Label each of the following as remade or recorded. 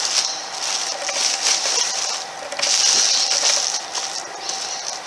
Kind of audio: recorded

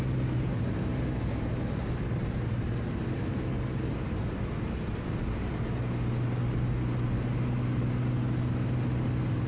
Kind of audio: recorded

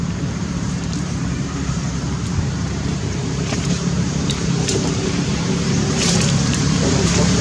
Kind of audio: remade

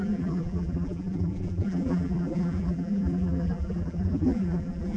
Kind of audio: remade